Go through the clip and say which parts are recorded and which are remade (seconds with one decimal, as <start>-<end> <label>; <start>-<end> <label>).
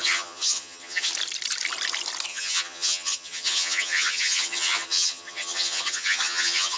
0.0-1.1 remade; 1.1-2.3 recorded; 2.3-6.8 remade